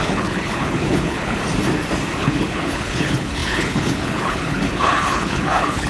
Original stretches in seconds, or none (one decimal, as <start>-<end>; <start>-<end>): 1.4-2.2